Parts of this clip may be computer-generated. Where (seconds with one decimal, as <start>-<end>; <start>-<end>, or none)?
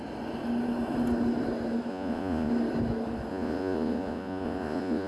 1.9-2.5; 3.3-5.1